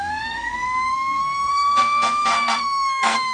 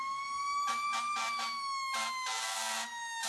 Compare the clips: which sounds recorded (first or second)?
second